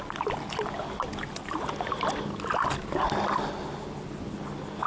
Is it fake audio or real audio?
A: real